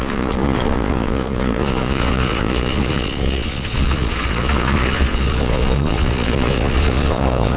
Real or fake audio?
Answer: fake